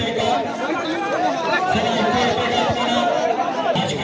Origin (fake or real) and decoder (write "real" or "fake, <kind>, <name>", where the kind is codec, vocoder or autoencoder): real